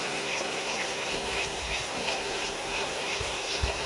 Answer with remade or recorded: remade